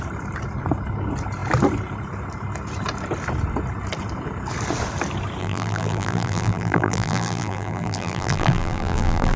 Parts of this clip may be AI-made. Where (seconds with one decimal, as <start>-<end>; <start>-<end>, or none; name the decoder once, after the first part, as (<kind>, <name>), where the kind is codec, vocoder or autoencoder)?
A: 5.4-9.4 (vocoder, BigVGAN v2)